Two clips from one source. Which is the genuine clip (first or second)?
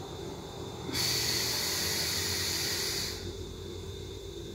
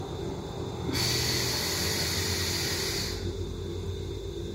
second